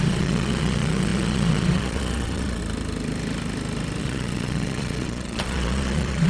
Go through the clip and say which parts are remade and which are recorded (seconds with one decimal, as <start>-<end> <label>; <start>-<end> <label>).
0.0-2.6 remade; 2.6-4.0 recorded; 4.0-6.3 remade